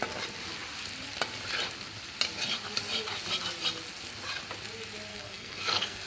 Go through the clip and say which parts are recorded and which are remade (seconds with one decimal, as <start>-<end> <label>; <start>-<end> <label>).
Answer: 0.0-5.1 recorded; 5.1-6.1 remade